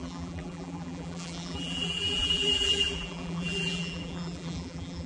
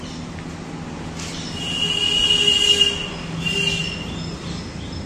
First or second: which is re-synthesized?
first